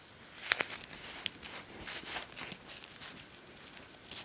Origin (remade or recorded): recorded